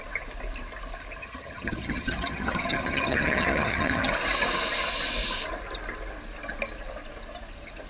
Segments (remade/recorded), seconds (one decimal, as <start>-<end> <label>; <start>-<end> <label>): 0.0-1.2 recorded; 1.2-4.1 remade; 4.1-7.9 recorded